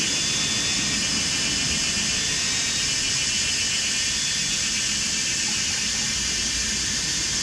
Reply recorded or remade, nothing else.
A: recorded